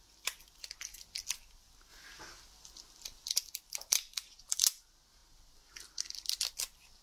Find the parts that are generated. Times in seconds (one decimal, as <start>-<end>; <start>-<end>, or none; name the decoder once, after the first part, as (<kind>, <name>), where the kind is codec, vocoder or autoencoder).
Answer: none